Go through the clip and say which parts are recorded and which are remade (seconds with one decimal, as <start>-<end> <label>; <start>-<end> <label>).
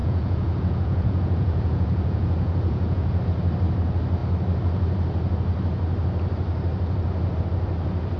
0.0-3.2 remade; 3.2-8.2 recorded